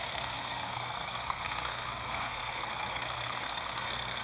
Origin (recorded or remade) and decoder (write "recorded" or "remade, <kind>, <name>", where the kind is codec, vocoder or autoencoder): remade, codec, SNAC